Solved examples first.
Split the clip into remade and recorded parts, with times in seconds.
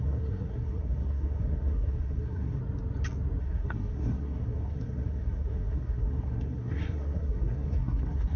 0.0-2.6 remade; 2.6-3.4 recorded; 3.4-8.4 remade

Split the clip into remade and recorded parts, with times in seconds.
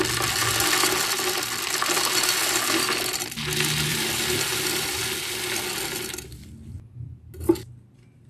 0.0-3.9 recorded; 3.9-5.0 remade; 5.0-8.3 recorded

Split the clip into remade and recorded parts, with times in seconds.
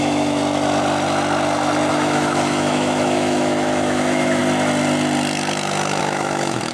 0.0-0.4 remade; 0.4-1.9 recorded; 1.9-4.4 remade; 4.4-6.0 recorded; 6.0-6.7 remade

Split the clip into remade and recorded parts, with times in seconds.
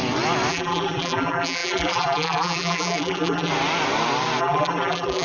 0.0-0.5 recorded; 0.5-3.5 remade; 3.5-4.4 recorded; 4.4-5.2 remade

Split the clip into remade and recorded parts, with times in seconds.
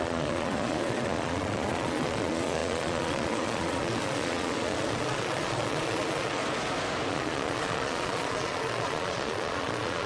0.0-6.4 remade; 6.4-7.1 recorded; 7.1-10.1 remade